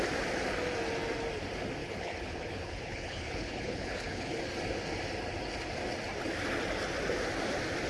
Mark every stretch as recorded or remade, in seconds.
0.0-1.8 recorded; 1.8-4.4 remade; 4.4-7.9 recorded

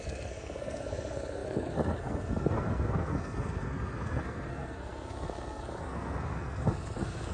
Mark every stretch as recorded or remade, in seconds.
0.0-7.3 remade

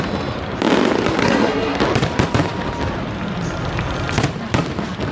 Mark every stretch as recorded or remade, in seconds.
0.0-1.2 recorded; 1.2-1.8 remade; 1.8-5.1 recorded

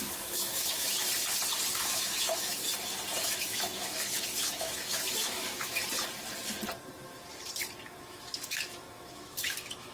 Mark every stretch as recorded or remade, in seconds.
0.0-1.1 remade; 1.1-1.7 recorded; 1.7-2.7 remade; 2.7-3.2 recorded; 3.2-5.8 remade; 5.8-8.0 recorded; 8.0-9.9 remade

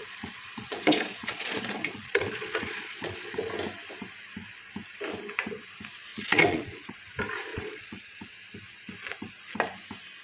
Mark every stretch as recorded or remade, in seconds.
0.0-3.5 remade; 3.5-6.1 recorded; 6.1-6.9 remade; 6.9-7.5 recorded; 7.5-8.2 remade; 8.2-10.2 recorded

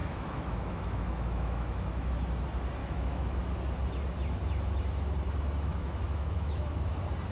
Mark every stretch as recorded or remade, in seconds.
0.0-2.1 remade; 2.1-2.8 recorded; 2.8-3.4 remade; 3.4-5.7 recorded; 5.7-6.8 remade; 6.8-7.3 recorded

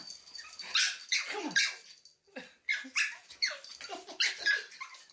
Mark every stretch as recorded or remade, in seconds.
0.0-5.1 recorded